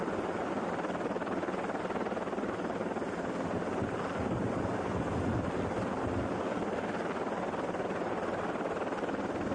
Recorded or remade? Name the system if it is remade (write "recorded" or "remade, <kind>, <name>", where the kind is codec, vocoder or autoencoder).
recorded